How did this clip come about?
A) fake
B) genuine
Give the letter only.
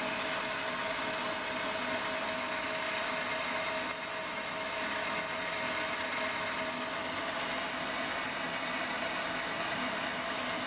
B